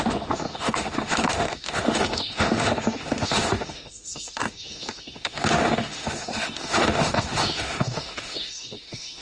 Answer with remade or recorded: remade